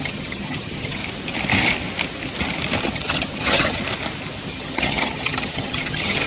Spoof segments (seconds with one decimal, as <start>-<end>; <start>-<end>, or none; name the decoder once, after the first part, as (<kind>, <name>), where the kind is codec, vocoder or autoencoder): 0.0-1.0 (vocoder, HiFi-GAN); 2.8-3.8; 4.5-6.3